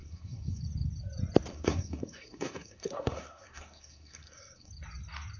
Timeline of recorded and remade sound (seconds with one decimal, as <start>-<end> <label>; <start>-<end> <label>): 0.0-0.6 remade; 0.6-1.5 recorded; 1.5-4.7 remade; 4.7-5.4 recorded